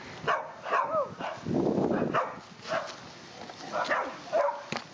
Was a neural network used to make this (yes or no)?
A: no